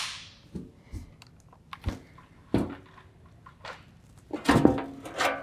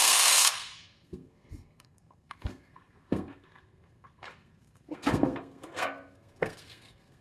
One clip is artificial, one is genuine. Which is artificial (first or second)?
second